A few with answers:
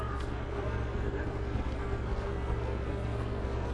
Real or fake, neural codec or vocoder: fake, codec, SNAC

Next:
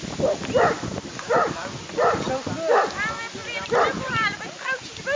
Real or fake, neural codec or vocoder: real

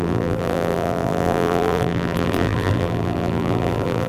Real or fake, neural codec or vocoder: fake, vocoder, BigVGAN v2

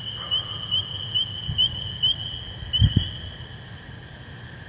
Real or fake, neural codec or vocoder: real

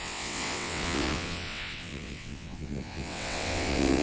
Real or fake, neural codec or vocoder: fake, vocoder, WaveNeXt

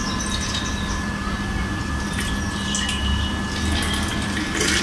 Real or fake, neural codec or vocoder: real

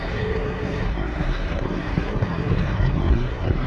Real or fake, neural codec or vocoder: fake, codec, SNAC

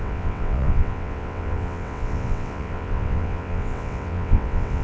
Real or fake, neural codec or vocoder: fake, vocoder, WaveNeXt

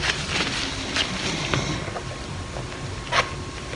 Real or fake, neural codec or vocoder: real